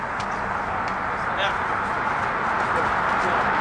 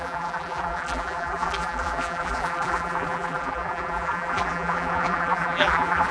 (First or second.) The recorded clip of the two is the first